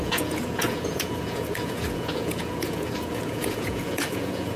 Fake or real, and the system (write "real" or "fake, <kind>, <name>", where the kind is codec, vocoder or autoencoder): fake, vocoder, Vocos